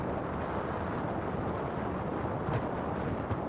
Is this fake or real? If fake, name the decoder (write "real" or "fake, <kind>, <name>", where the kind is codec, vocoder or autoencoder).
real